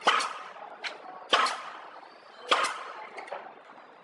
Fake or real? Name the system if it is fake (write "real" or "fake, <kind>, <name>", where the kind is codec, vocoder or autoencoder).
real